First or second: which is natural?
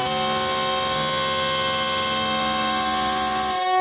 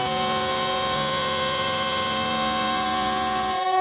first